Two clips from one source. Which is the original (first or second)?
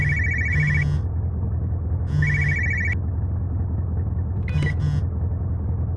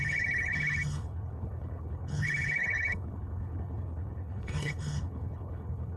first